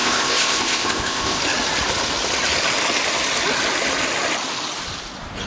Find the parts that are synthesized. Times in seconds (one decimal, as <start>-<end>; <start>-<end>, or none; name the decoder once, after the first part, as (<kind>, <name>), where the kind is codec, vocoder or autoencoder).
0.0-1.4 (codec, ZipCodec)